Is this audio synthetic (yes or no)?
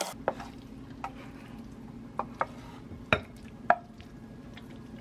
no